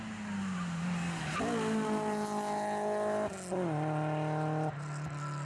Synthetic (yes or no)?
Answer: no